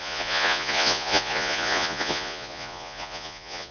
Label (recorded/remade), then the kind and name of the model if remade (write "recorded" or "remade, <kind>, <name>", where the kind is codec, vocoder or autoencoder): remade, vocoder, Vocos